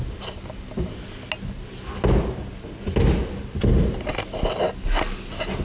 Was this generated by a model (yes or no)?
no